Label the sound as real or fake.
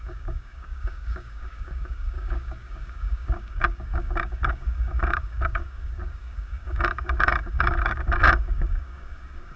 fake